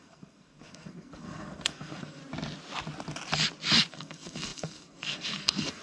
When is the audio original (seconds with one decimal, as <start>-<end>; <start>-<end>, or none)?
2.2-3.9